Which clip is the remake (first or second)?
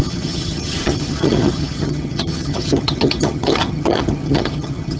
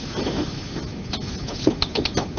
first